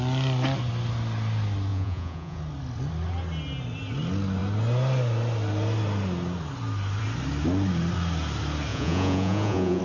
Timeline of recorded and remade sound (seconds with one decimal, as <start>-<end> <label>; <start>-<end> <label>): 0.0-1.7 recorded; 1.7-2.4 remade; 2.4-8.7 recorded; 8.7-9.8 remade